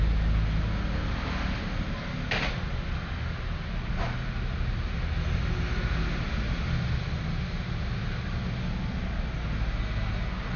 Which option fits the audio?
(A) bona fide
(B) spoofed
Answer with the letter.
A